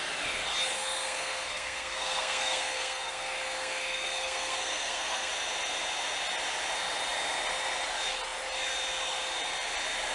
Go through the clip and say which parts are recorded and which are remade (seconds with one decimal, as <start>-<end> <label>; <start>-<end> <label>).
0.0-0.7 recorded; 0.7-5.3 remade; 5.3-10.1 recorded